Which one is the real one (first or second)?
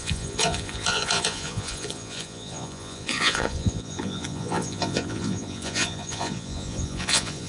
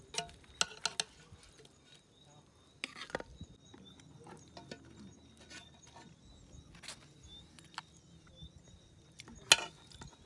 second